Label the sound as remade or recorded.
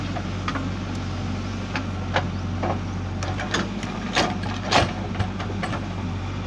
recorded